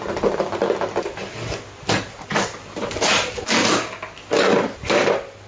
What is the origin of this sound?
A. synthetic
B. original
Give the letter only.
B